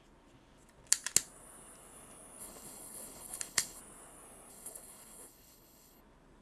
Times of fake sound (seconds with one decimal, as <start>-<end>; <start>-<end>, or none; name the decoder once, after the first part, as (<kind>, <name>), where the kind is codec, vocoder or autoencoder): 2.4-3.8 (codec, HILCodec); 4.5-6.0